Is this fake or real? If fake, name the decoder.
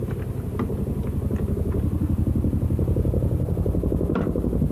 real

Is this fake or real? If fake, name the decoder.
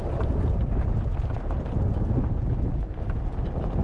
real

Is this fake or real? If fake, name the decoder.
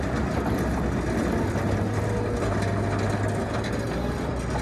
real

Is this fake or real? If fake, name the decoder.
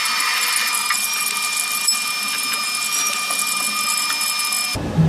real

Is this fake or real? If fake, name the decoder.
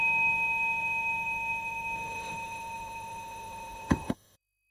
fake, autoencoder, DAC-VAE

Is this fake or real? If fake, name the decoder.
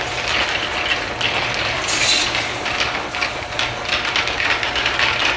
real